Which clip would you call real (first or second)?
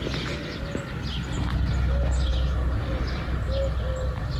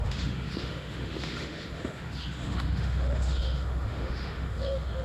first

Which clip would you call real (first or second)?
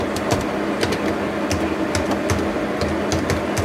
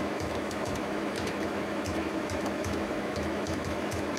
first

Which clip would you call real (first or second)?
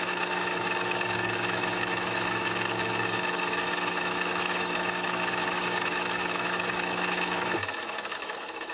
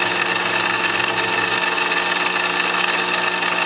second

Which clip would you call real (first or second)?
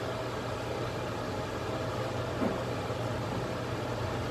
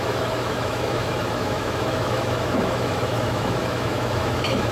first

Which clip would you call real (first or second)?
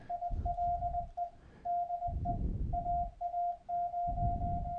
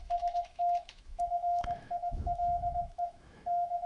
first